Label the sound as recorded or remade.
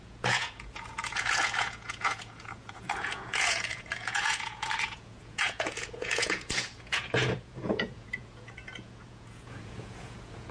remade